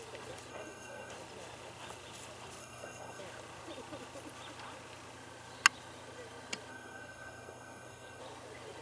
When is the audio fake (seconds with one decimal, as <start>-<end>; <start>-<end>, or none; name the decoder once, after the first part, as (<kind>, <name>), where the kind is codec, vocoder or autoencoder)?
0.5-1.1 (codec, SNAC); 2.6-3.2; 6.7-8.2